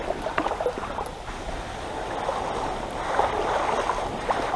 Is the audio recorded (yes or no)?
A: yes